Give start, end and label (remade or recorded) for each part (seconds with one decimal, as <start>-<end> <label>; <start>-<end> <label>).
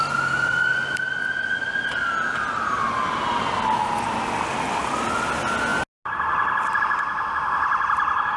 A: 0.0-8.4 recorded